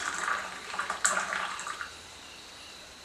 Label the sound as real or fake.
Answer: fake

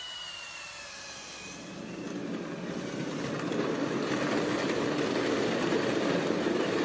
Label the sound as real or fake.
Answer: real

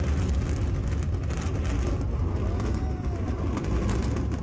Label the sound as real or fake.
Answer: real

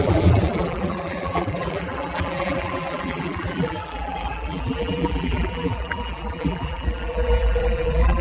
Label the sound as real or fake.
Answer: fake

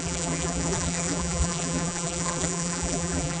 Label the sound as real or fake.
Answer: fake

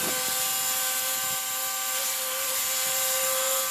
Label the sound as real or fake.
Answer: real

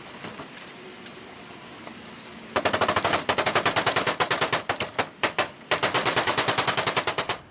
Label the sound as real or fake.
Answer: fake